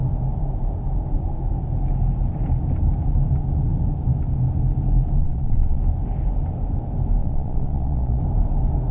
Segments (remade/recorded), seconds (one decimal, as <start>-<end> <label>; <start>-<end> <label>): 0.0-5.2 recorded; 5.2-5.8 remade; 5.8-7.2 recorded; 7.2-8.2 remade; 8.2-8.9 recorded